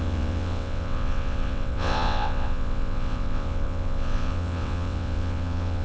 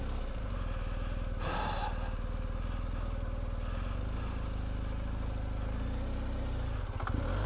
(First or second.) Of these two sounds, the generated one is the first